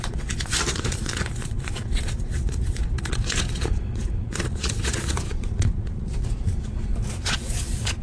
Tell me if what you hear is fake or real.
fake